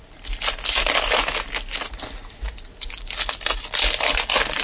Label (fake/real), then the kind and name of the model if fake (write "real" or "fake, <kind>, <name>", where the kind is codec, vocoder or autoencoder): real